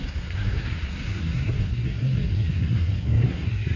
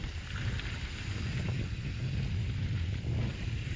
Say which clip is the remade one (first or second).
first